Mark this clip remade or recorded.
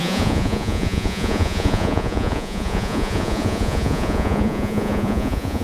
remade